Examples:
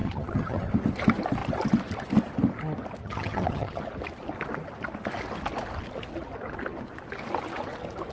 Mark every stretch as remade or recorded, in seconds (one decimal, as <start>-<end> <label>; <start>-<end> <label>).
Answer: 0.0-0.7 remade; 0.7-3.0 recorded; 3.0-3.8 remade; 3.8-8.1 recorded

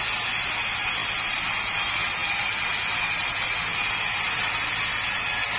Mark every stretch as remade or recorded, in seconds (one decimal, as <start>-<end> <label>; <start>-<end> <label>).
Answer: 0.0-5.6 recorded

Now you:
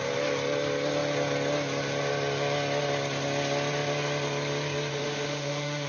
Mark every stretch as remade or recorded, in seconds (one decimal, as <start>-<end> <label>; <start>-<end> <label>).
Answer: 0.0-4.9 recorded; 4.9-5.9 remade

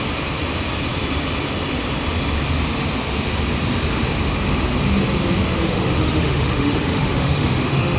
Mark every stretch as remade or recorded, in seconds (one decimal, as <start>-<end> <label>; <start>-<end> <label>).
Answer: 0.0-5.4 recorded; 5.4-8.0 remade

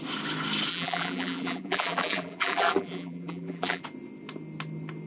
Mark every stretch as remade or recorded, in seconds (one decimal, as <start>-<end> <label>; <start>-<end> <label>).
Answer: 0.0-0.7 recorded; 0.7-3.8 remade; 3.8-5.1 recorded

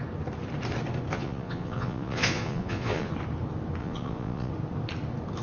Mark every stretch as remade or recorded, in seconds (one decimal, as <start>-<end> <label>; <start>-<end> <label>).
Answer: 0.0-1.1 recorded; 1.1-3.1 remade; 3.1-3.8 recorded; 3.8-4.5 remade; 4.5-5.4 recorded